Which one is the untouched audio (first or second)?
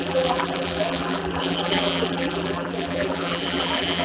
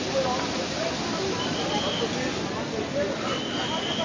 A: second